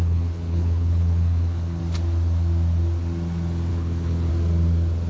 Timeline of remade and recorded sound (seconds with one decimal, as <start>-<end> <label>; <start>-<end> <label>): 0.0-1.8 remade; 1.8-3.7 recorded; 3.7-4.3 remade; 4.3-5.1 recorded